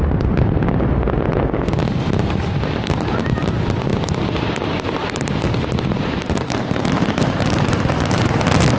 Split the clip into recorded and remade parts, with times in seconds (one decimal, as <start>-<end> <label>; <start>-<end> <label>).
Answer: 0.0-3.9 recorded; 3.9-8.4 remade; 8.4-8.8 recorded